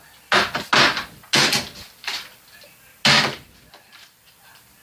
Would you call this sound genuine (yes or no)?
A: yes